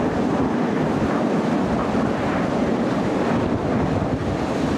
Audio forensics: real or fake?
real